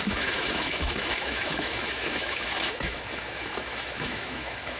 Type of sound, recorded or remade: remade